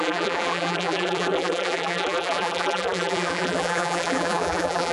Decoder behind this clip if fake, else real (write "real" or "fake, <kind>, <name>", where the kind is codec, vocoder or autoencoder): fake, vocoder, BigVGAN v2